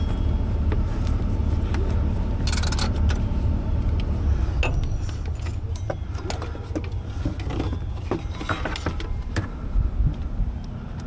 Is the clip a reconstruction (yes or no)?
no